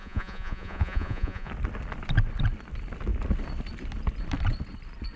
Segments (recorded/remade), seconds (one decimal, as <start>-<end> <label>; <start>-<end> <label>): 0.0-1.5 remade; 1.5-5.2 recorded